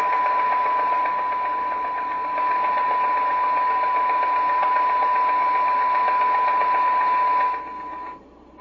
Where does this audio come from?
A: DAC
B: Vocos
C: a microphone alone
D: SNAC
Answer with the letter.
C